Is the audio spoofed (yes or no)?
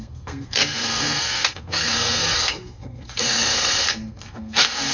yes